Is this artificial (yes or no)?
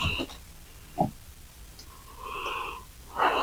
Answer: no